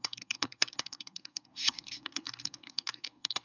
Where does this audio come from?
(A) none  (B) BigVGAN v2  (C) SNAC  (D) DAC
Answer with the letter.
C